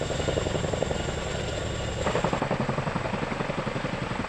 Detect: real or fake real